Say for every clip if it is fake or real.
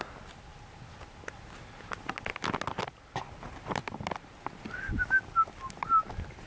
real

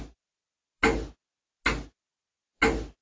real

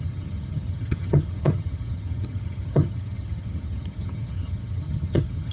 fake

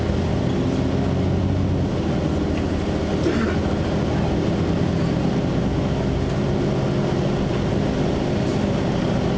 real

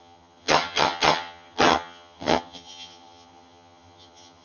fake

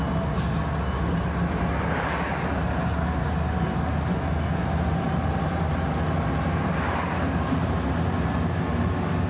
real